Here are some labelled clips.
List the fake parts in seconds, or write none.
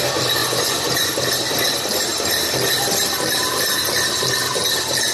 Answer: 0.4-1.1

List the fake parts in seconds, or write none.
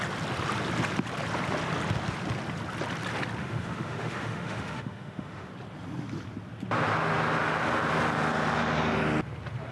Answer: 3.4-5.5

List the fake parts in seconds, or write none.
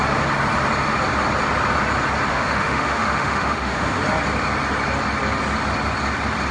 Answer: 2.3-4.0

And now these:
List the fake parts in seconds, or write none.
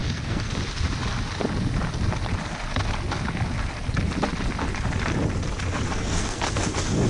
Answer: 0.0-0.6; 5.9-7.1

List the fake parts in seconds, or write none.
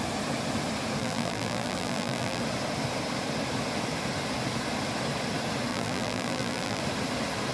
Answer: 1.0-2.4; 5.7-6.8